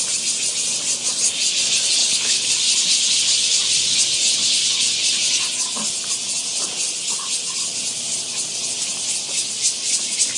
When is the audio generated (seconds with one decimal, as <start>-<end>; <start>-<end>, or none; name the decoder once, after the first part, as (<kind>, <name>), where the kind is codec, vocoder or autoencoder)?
2.0-2.5 (codec, HILCodec)